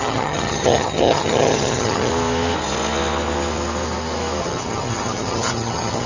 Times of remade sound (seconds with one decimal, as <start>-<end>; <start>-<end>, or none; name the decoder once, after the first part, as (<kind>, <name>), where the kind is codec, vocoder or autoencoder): 0.0-2.1 (vocoder, HiFi-GAN); 4.4-6.1